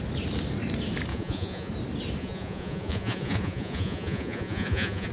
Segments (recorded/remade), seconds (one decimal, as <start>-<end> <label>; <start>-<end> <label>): 0.0-1.1 recorded; 1.1-1.7 remade; 1.7-2.2 recorded; 2.2-5.1 remade